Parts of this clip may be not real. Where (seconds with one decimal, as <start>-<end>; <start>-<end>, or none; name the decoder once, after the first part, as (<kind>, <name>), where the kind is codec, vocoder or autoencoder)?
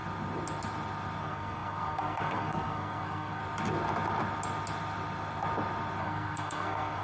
1.2-3.4 (codec, SNAC); 6.0-7.0